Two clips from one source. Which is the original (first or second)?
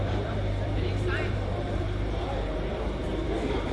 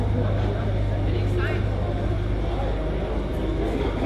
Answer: second